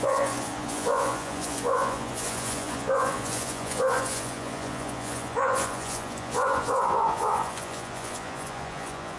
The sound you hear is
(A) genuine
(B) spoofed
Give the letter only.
B